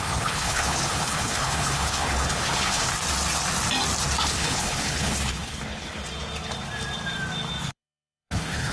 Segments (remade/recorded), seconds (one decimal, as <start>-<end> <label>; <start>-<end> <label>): 0.0-2.9 remade; 2.9-4.2 recorded; 4.2-6.0 remade; 6.0-7.6 recorded; 7.6-8.7 remade